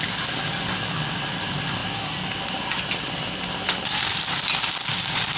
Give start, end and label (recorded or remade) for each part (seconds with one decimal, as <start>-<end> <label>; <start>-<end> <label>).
0.0-5.4 recorded